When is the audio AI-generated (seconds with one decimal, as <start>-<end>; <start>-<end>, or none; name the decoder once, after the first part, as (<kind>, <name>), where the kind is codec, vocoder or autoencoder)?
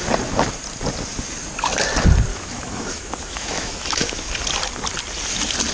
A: 2.3-4.3 (autoencoder, DAC-VAE)